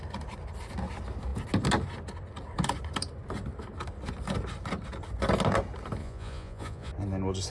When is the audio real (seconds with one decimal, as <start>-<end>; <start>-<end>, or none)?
0.0-6.0; 6.9-7.5